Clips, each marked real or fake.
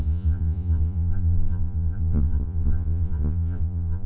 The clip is fake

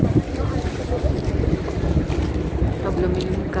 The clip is real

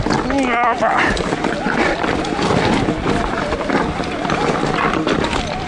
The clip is real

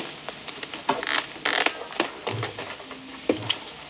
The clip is real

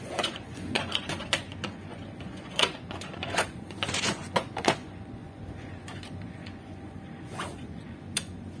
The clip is fake